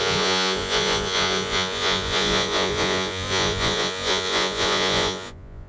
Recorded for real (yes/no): no